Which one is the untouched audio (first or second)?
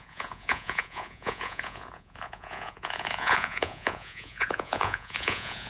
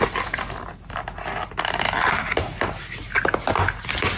second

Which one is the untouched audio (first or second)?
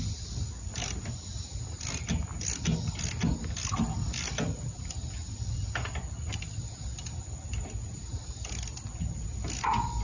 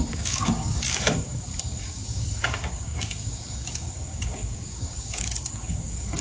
first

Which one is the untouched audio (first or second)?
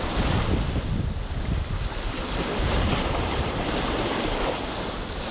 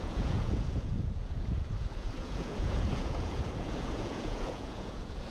first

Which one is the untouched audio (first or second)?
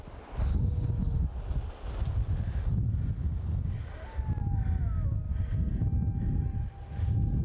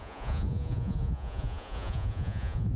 first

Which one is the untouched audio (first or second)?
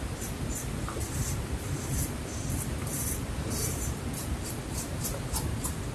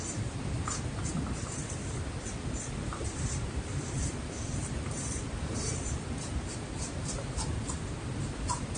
first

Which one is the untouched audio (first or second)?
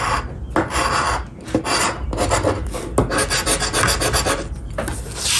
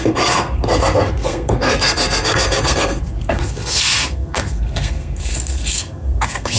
first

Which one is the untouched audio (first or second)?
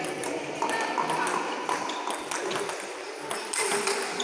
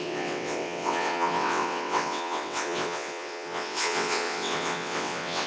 first